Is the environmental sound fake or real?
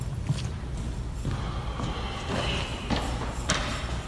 real